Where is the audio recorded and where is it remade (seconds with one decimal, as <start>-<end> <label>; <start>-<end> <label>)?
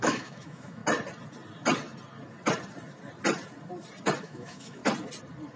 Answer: 0.0-0.8 remade; 0.8-4.2 recorded; 4.2-4.8 remade; 4.8-5.6 recorded